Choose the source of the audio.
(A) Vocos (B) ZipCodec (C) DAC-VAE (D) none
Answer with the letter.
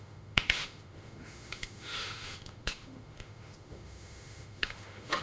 C